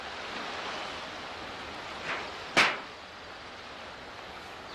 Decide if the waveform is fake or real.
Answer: real